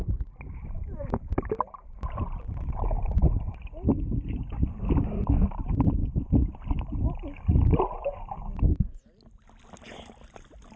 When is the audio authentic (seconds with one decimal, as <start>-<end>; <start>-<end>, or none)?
0.0-10.8